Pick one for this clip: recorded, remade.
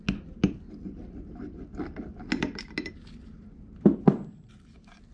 recorded